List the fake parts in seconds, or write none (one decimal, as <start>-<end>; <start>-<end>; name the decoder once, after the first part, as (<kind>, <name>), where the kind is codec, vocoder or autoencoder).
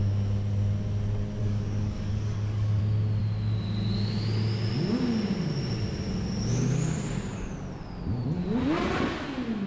1.4-2.8 (codec, DAC)